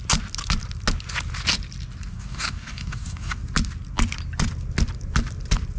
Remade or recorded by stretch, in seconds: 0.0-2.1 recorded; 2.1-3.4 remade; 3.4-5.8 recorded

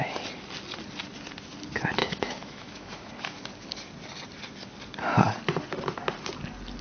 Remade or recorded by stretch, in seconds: 0.0-2.0 recorded; 2.0-3.1 remade; 3.1-6.8 recorded